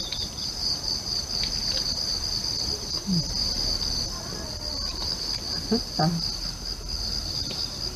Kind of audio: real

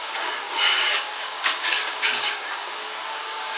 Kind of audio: fake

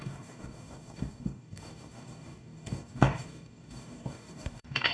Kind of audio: fake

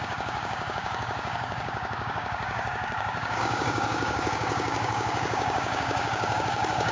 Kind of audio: fake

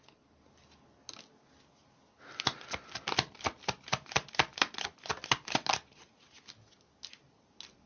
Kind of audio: real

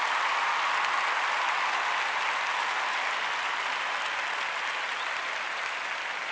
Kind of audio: real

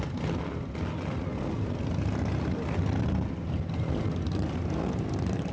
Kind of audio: real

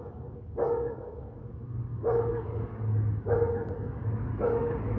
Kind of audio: fake